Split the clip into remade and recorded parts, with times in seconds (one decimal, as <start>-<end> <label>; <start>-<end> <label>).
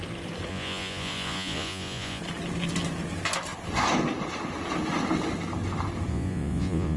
0.0-0.5 recorded; 0.5-2.2 remade; 2.2-6.1 recorded; 6.1-7.0 remade